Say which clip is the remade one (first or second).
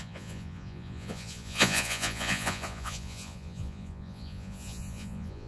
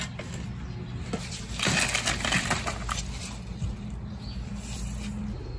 first